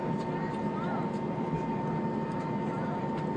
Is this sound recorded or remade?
recorded